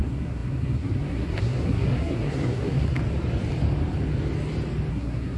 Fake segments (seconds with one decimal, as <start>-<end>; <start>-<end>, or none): 0.0-3.0; 4.9-5.4